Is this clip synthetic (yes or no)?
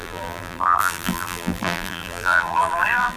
yes